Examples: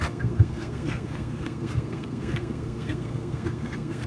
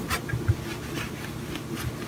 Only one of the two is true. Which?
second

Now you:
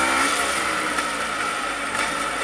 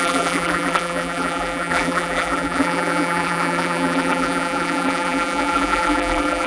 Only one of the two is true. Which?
first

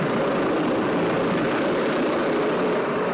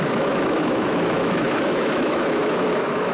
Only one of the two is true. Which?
first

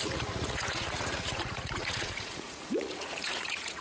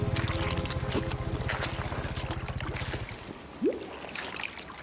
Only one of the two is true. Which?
second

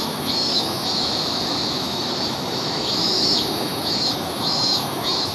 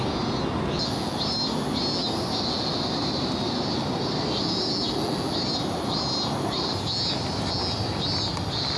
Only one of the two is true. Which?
second